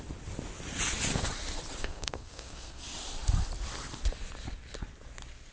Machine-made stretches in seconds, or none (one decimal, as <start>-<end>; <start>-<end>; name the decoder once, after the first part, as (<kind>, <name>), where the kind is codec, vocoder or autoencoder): 1.8-2.8 (codec, SNAC)